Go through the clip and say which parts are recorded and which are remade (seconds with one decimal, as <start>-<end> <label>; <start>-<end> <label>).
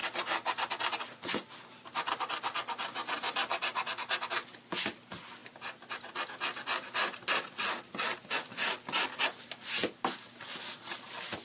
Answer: 0.0-11.4 recorded